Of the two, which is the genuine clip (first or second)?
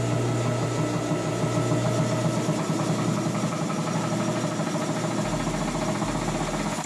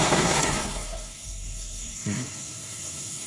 first